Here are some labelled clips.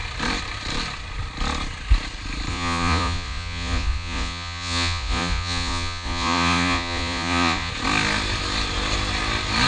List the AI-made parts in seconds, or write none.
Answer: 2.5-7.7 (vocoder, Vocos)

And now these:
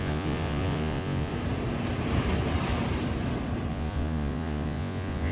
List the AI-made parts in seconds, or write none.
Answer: 0.0-1.3 (vocoder, Vocos); 3.7-5.3

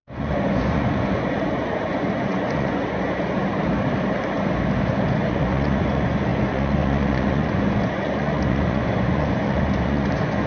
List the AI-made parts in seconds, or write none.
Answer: 0.0-3.4 (vocoder, Vocos); 4.9-10.5